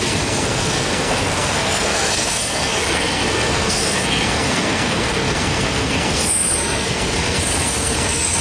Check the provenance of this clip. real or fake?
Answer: fake